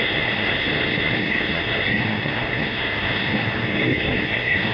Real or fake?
fake